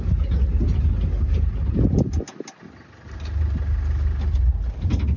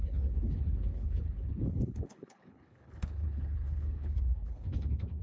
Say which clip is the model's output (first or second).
second